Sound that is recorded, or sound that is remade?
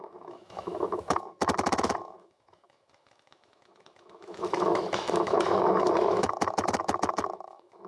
remade